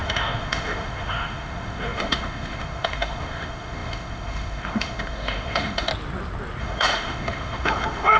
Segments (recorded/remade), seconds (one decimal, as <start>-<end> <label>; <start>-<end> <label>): 0.0-5.9 remade; 5.9-6.6 recorded; 6.6-8.2 remade